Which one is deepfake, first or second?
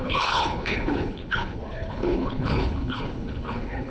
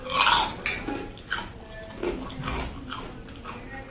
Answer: first